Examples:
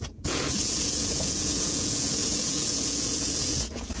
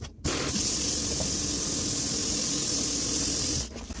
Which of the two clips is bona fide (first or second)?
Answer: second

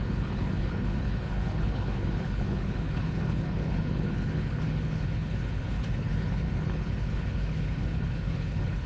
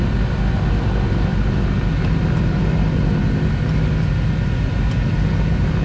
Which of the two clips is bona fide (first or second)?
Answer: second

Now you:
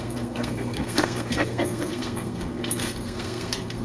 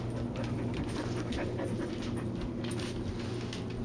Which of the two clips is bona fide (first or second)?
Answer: second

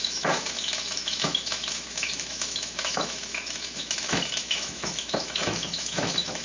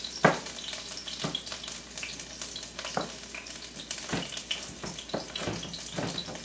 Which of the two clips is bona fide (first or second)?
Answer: second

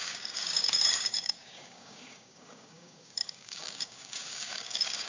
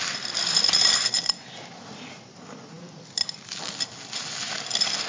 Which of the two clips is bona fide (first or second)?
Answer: second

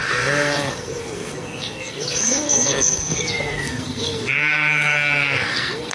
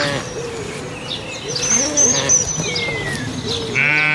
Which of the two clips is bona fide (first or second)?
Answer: second